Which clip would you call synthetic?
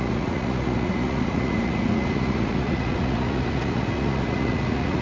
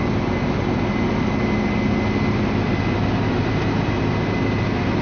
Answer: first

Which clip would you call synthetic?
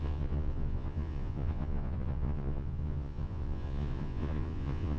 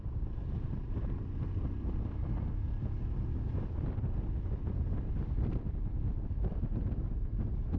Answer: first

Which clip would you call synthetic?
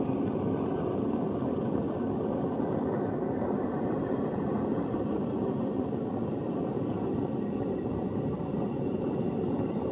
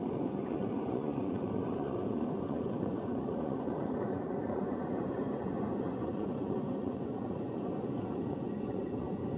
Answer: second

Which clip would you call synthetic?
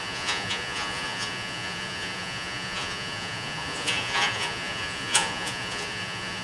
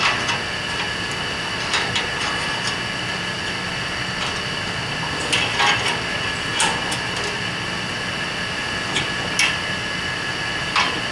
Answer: first